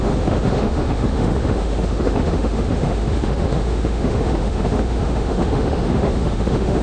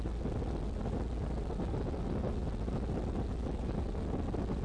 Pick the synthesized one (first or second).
first